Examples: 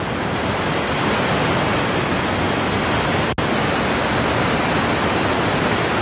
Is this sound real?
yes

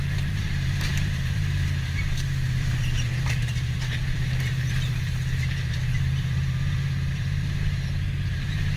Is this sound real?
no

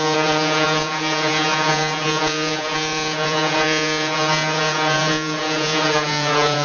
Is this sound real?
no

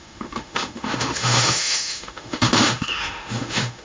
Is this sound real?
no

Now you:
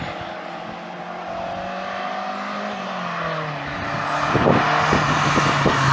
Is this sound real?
yes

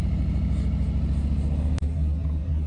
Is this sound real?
yes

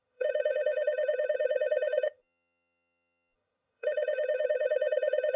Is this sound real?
no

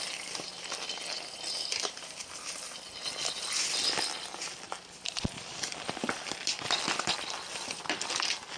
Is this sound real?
yes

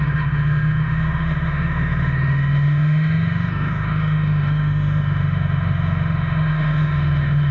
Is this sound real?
no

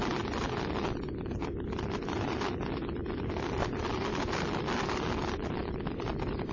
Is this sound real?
yes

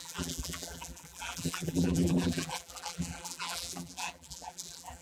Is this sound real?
no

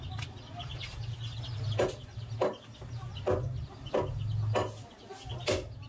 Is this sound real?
yes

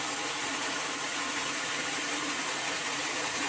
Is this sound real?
no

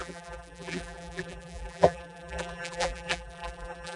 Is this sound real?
no